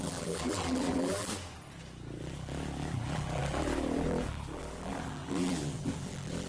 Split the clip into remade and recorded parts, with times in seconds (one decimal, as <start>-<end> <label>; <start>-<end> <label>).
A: 0.0-1.3 remade; 1.3-2.2 recorded; 2.2-6.5 remade